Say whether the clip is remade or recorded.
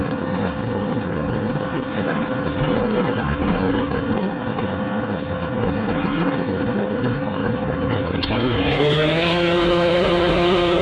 remade